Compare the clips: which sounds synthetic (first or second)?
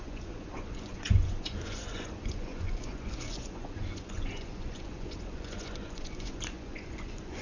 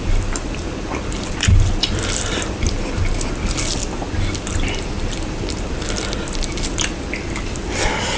first